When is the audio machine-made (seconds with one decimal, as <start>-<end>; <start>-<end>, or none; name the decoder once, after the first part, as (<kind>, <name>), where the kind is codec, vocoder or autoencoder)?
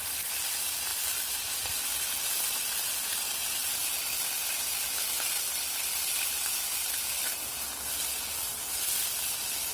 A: 0.0-0.9 (vocoder, BigVGAN v2); 1.8-8.5; 9.2-9.7